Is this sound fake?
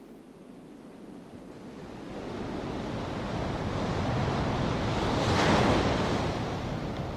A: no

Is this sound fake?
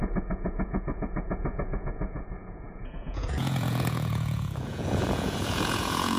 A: yes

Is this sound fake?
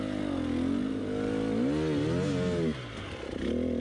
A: no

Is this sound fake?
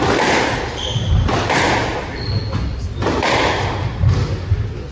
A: no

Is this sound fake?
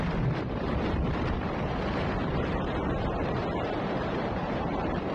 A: yes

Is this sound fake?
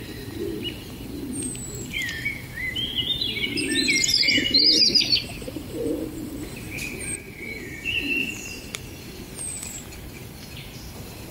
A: yes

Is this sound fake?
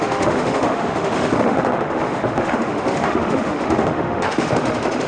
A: yes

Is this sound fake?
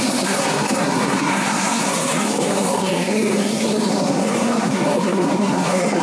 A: yes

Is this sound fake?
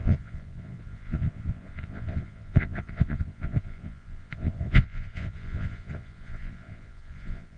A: yes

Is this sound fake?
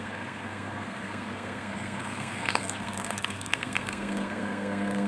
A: yes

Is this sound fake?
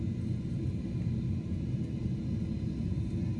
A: no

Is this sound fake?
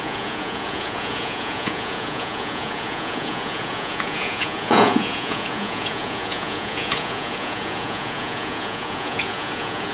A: yes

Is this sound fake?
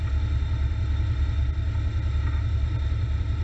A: no